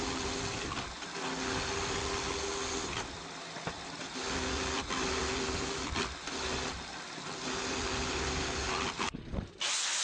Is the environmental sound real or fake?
real